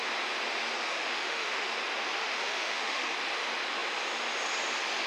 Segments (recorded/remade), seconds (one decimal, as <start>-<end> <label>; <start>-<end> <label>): 0.0-0.8 recorded; 0.8-1.7 remade; 1.7-2.2 recorded; 2.2-3.1 remade; 3.1-5.1 recorded